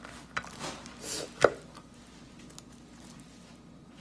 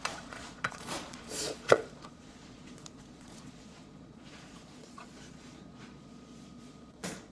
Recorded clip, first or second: first